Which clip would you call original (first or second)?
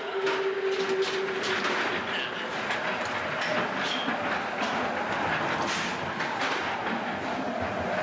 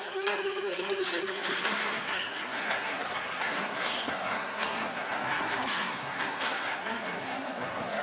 first